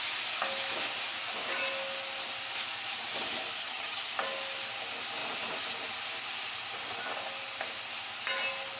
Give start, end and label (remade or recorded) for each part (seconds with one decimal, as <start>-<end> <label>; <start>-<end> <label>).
0.0-3.6 recorded; 3.6-4.1 remade; 4.1-8.8 recorded